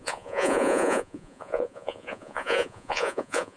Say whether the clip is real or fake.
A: fake